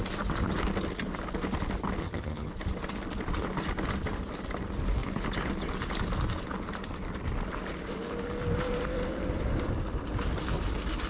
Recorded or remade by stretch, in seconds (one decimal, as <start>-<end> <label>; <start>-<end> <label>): 0.0-2.0 recorded; 2.0-2.5 remade; 2.5-11.1 recorded